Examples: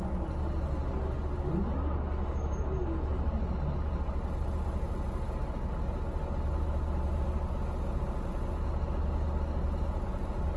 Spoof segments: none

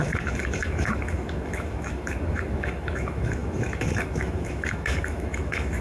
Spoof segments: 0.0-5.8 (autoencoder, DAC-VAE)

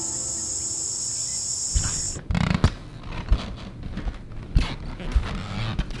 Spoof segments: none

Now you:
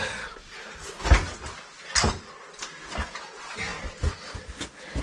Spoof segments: none

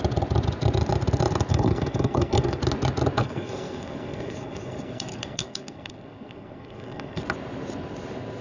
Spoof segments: 1.5-2.6 (codec, SNAC); 3.2-7.2

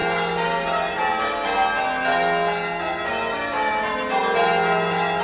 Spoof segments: none